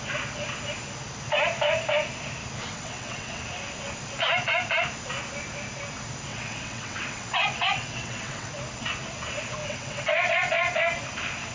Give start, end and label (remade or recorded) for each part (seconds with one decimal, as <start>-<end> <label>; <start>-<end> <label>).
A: 0.0-2.6 recorded; 2.6-3.4 remade; 3.4-6.3 recorded; 6.3-8.5 remade; 8.5-9.6 recorded; 9.6-10.3 remade; 10.3-11.5 recorded